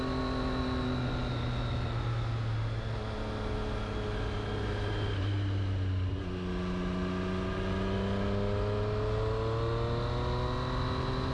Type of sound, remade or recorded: recorded